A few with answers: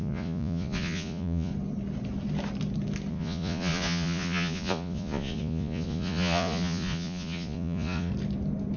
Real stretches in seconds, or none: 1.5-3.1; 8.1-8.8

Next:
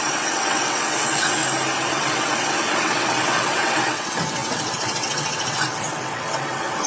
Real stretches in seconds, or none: 1.4-1.9

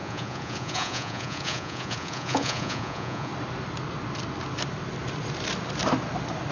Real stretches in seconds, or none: 3.3-6.5